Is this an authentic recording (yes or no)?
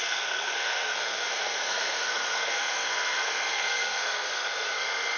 no